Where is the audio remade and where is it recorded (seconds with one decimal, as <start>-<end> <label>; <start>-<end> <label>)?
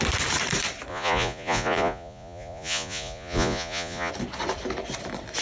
0.0-0.9 recorded; 0.9-4.1 remade; 4.1-5.4 recorded